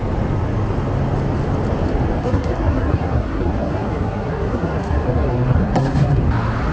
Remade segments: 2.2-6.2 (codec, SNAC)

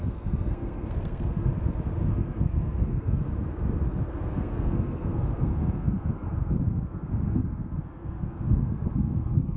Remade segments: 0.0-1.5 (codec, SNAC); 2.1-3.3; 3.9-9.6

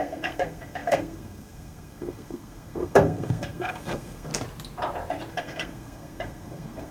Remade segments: 0.0-4.3 (codec, SNAC); 5.3-6.9

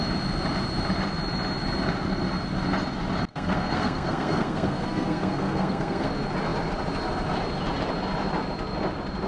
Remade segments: 3.3-6.1 (codec, SNAC)

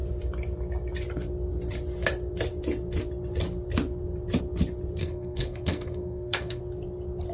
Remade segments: 5.0-6.6 (codec, SNAC)